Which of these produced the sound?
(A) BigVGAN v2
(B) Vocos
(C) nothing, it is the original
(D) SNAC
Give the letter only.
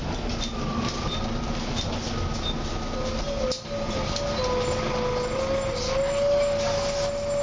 C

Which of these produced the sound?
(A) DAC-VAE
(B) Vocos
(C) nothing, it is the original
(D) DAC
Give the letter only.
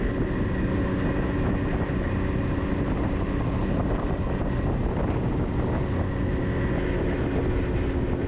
C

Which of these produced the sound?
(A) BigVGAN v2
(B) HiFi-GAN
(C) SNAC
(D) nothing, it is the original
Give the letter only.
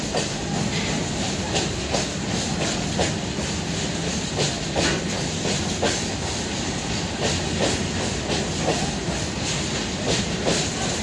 D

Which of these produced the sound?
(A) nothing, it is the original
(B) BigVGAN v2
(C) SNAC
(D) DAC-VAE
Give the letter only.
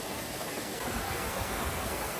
C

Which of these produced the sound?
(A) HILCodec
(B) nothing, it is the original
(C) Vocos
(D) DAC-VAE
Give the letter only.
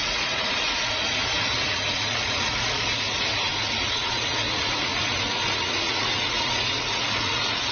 C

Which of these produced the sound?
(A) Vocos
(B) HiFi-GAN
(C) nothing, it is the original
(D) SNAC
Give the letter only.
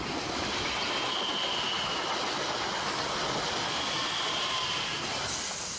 C